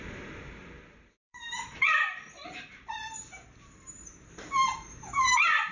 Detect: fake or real fake